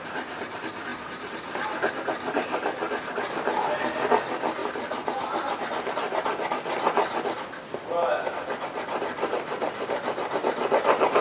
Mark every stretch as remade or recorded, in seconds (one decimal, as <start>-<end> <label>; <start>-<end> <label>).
0.0-11.2 recorded